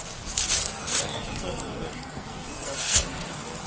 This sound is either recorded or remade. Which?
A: remade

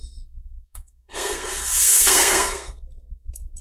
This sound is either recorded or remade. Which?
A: remade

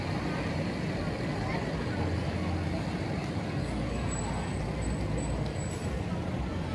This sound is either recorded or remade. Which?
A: recorded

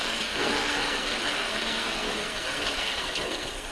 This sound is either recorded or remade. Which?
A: remade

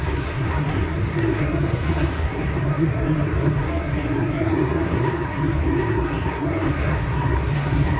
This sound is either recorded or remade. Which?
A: remade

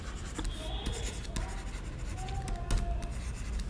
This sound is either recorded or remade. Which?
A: recorded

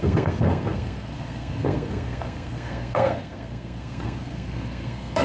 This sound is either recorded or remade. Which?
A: remade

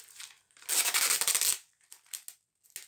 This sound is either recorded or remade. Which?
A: recorded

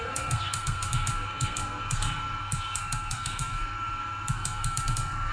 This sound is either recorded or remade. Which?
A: remade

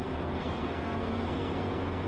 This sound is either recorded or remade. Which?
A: remade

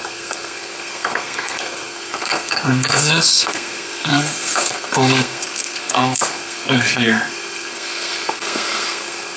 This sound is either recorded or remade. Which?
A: remade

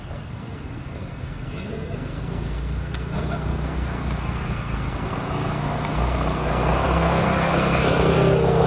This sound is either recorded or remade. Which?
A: remade